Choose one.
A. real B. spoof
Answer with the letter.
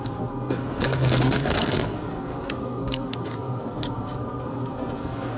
B